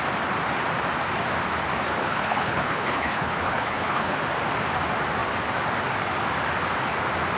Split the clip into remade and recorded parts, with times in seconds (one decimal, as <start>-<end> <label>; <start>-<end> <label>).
0.0-2.0 recorded; 2.0-4.2 remade; 4.2-7.4 recorded

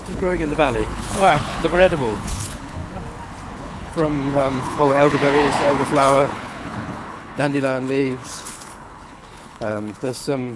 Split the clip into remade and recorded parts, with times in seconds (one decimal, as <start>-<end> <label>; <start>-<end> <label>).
0.0-2.8 remade; 2.8-3.6 recorded; 3.6-10.6 remade

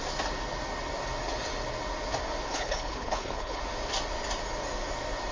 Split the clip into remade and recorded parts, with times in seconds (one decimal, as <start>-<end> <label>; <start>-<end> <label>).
0.0-2.5 recorded; 2.5-3.6 remade; 3.6-5.3 recorded

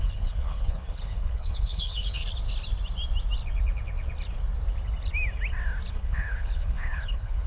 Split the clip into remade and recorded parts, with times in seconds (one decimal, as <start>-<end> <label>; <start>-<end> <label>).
0.0-2.2 remade; 2.2-5.9 recorded; 5.9-7.5 remade

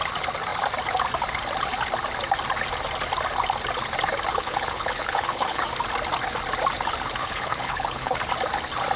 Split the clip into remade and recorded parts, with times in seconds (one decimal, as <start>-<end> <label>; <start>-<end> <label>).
0.0-4.3 recorded; 4.3-5.6 remade; 5.6-7.2 recorded; 7.2-8.2 remade; 8.2-9.0 recorded

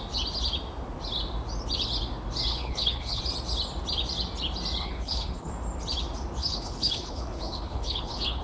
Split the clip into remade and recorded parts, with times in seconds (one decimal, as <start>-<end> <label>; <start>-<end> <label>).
0.0-2.5 recorded; 2.5-3.2 remade; 3.2-4.8 recorded; 4.8-5.5 remade; 5.5-6.4 recorded; 6.4-8.4 remade